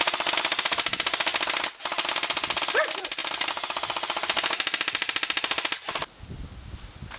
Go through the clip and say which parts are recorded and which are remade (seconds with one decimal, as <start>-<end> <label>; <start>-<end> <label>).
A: 0.0-7.2 recorded